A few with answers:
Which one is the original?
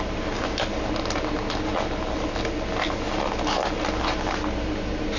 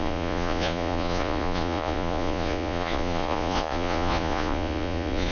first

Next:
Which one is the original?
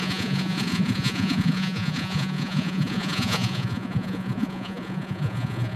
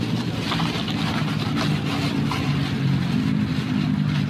second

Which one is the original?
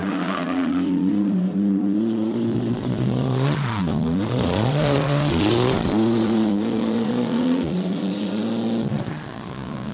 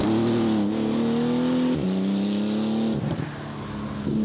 second